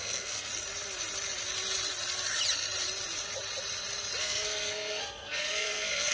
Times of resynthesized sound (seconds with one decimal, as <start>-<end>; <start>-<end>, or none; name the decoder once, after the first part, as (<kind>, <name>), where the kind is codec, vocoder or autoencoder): 0.0-0.5 (codec, SNAC); 4.2-6.1